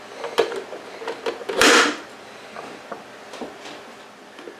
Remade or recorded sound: recorded